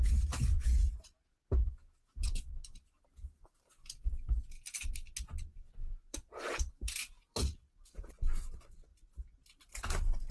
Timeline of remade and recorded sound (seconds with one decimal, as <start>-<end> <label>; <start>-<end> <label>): 0.0-0.5 recorded; 0.5-2.5 remade; 2.5-5.9 recorded; 5.9-8.1 remade; 8.1-8.9 recorded; 8.9-10.3 remade